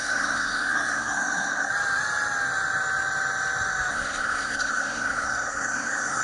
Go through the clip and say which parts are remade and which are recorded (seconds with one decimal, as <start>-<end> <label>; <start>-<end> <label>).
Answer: 0.0-1.7 remade; 1.7-3.9 recorded; 3.9-6.2 remade